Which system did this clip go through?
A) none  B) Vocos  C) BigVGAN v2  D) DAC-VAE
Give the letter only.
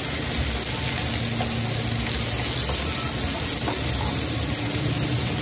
A